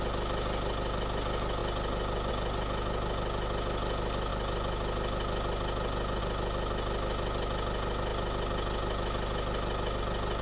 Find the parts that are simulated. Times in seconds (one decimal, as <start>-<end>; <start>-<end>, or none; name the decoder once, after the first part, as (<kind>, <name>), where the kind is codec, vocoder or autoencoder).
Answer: none